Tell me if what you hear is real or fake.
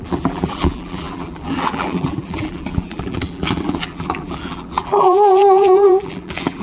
fake